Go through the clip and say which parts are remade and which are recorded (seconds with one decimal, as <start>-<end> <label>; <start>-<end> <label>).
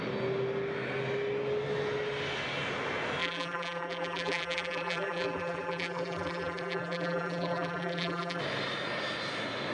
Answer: 0.0-3.2 recorded; 3.2-8.4 remade; 8.4-9.7 recorded